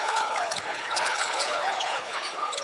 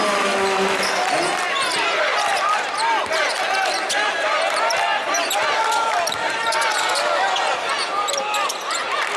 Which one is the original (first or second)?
second